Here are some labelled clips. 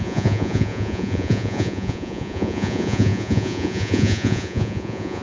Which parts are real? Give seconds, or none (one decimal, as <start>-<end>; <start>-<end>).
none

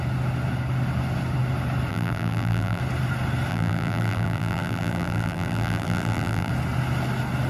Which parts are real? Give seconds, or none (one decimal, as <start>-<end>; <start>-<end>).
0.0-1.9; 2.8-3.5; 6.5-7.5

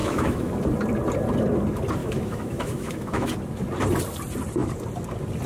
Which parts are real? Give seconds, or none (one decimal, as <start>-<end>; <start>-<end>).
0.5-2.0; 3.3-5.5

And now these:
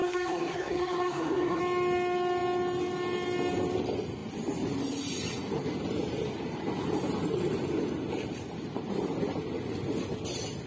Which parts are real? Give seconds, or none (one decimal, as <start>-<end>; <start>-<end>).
1.6-10.7

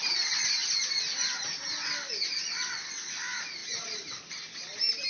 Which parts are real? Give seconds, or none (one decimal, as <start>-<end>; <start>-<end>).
0.0-5.1

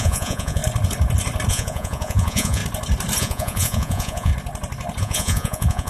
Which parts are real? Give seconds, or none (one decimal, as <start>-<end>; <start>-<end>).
0.6-1.5; 2.6-3.2; 4.3-5.0